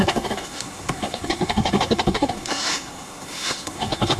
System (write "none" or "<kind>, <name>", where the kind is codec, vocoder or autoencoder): codec, SNAC